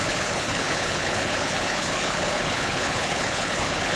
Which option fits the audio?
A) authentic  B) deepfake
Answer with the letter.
B